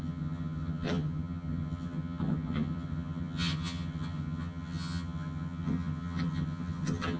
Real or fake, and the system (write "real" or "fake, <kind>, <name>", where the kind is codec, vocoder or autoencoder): fake, vocoder, HiFi-GAN